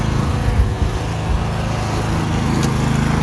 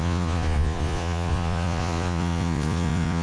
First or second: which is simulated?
second